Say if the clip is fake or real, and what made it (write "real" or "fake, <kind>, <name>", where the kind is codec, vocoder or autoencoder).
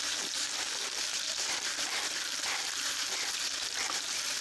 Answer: fake, vocoder, BigVGAN v2